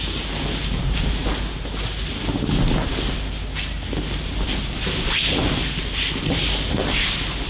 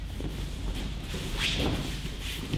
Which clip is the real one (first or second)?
first